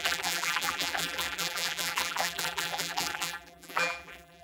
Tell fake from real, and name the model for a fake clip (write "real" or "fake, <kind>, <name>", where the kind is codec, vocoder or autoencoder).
fake, vocoder, BigVGAN v2